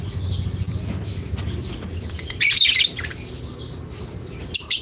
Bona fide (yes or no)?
yes